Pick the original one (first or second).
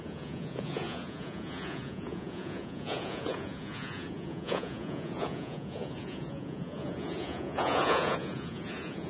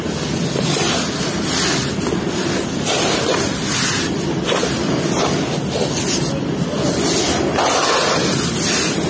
second